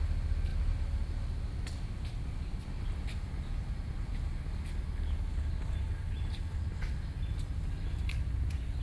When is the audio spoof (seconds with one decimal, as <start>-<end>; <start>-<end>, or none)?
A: none

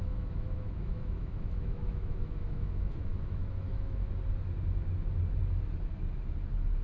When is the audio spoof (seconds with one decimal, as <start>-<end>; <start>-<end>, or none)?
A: 0.0-4.1

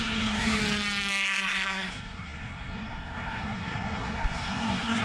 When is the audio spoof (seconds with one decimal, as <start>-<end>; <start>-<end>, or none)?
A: 0.0-0.6; 1.1-5.0

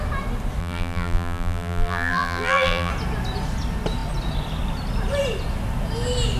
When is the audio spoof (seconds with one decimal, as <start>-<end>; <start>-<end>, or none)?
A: 0.6-2.9

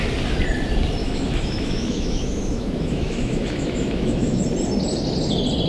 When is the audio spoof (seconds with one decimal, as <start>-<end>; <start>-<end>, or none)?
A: 1.0-4.4

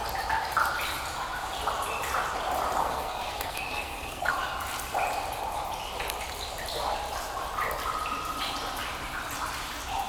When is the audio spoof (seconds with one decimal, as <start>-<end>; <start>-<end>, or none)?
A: 2.8-4.3

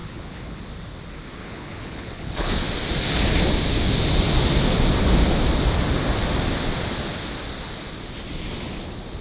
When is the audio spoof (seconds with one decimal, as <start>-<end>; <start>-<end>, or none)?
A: 0.0-0.6; 1.4-2.5